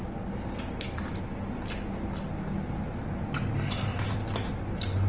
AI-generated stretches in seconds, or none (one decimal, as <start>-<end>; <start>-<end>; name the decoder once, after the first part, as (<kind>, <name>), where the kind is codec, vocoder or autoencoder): 3.9-4.5 (vocoder, BigVGAN v2)